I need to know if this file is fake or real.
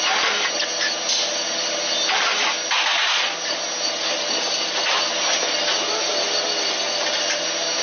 real